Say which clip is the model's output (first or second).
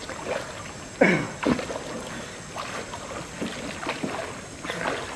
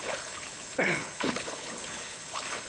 second